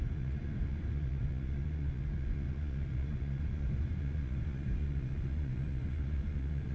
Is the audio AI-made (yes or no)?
yes